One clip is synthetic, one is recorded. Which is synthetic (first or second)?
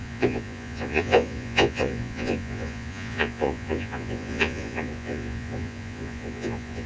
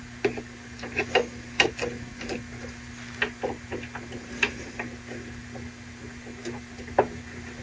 first